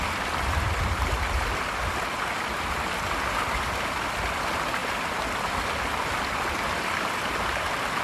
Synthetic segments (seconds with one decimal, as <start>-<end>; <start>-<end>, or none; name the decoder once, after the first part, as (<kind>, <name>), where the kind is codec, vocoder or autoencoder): none